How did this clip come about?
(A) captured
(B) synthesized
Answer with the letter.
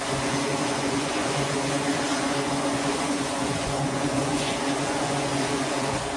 B